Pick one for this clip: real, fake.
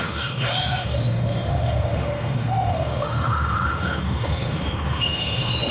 fake